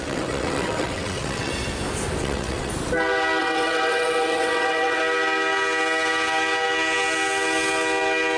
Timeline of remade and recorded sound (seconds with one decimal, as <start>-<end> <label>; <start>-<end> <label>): 0.0-1.5 remade; 1.5-2.2 recorded; 2.2-2.7 remade; 2.7-3.4 recorded; 3.4-5.0 remade; 5.0-8.4 recorded